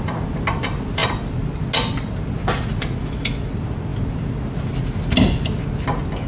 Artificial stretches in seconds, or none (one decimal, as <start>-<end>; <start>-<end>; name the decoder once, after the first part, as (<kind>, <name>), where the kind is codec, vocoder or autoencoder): 3.0-3.5 (autoencoder, DAC-VAE)